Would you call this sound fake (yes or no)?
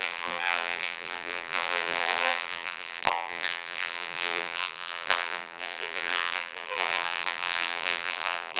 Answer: yes